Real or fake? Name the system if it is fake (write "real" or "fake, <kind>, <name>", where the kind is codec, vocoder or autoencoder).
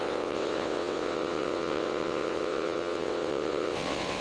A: fake, vocoder, WaveNeXt